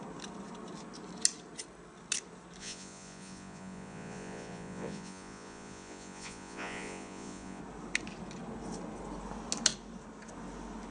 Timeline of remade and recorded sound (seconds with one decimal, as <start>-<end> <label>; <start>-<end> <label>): 0.0-2.6 recorded; 2.6-7.6 remade; 7.6-10.9 recorded